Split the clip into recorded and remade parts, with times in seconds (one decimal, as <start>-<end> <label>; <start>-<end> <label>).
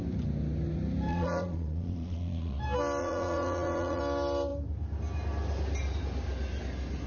0.0-1.1 recorded; 1.1-2.6 remade; 2.6-3.0 recorded; 3.0-4.0 remade; 4.0-7.1 recorded